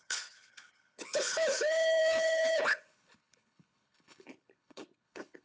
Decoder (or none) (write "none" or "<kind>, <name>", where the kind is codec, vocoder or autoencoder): codec, HILCodec